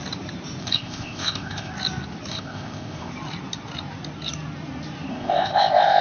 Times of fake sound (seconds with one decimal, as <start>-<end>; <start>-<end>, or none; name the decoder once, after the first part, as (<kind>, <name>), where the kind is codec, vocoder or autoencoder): 0.6-1.7 (codec, ZipCodec); 2.3-3.1; 5.1-6.0

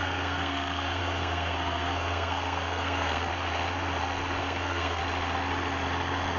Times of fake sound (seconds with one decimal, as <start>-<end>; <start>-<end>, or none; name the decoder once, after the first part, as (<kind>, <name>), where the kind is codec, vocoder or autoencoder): 0.0-3.3 (codec, SNAC); 4.4-5.0

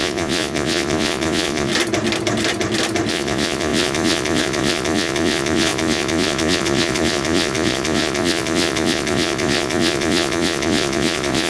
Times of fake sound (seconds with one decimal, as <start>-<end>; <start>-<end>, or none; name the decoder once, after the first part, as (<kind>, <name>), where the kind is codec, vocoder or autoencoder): 0.0-1.7 (vocoder, Vocos); 3.1-11.5

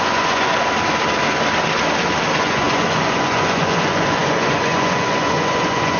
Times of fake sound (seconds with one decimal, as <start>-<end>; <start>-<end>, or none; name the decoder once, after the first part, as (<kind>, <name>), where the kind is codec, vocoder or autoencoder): 0.0-0.5 (vocoder, Vocos); 2.4-6.0